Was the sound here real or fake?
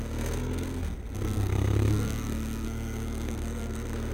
fake